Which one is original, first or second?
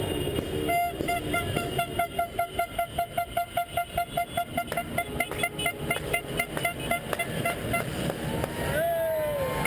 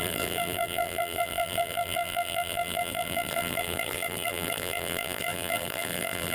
first